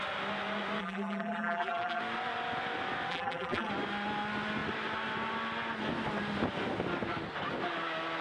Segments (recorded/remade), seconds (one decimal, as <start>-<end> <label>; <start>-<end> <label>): 0.0-0.8 recorded; 0.8-2.0 remade; 2.0-3.1 recorded; 3.1-3.7 remade; 3.7-8.2 recorded

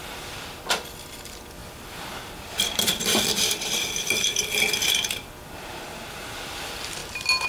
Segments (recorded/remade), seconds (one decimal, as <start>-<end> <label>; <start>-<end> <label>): 0.0-7.0 remade; 7.0-7.5 recorded

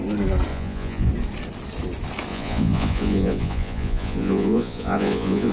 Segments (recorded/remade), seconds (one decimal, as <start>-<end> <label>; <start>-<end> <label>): 0.0-0.5 recorded; 0.5-1.1 remade; 1.1-2.3 recorded; 2.3-5.5 remade

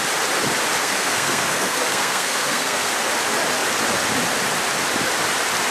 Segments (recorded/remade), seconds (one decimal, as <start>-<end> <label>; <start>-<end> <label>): 0.0-0.8 recorded; 0.8-2.9 remade; 2.9-5.7 recorded

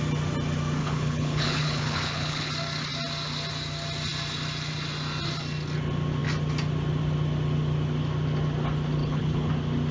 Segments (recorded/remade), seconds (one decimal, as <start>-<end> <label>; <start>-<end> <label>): 0.0-0.8 recorded; 0.8-2.5 remade; 2.5-9.0 recorded; 9.0-9.5 remade; 9.5-9.9 recorded